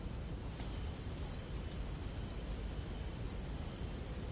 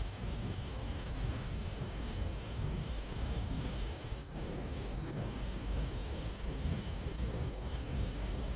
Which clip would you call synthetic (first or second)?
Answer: second